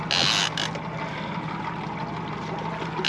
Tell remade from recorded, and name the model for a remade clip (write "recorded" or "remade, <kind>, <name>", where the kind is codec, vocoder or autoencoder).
recorded